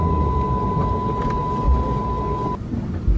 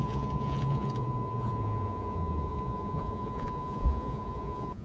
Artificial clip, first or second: second